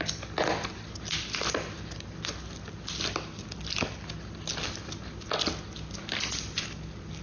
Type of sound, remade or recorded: recorded